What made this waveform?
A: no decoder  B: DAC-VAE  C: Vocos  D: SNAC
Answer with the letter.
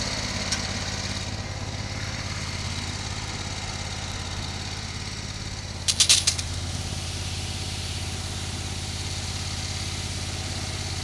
A